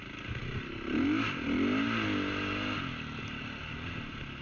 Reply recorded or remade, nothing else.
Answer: recorded